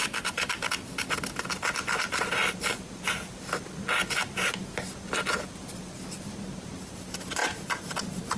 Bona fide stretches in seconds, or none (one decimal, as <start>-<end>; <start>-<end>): 0.7-7.4